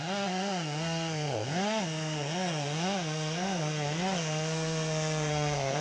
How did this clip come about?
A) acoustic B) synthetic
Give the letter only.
B